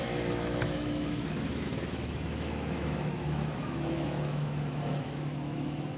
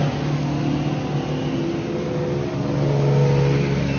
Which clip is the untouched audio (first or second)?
second